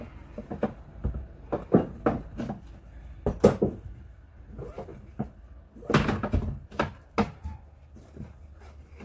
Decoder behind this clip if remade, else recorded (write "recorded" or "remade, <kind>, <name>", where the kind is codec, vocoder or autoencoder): recorded